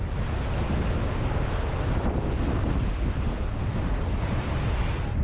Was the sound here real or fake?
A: real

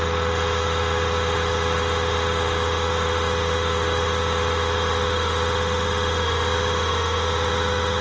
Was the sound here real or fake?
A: fake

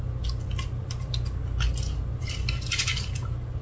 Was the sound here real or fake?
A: real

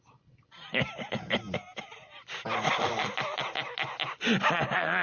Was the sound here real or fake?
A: real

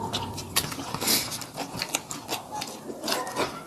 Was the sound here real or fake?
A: real